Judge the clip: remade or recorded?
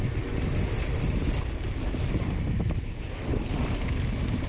recorded